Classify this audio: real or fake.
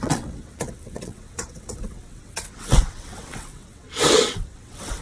fake